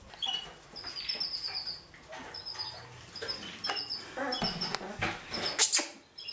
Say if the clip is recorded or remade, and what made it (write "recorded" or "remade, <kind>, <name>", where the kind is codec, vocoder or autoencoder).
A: recorded